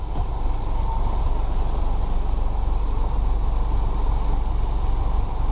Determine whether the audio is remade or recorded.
recorded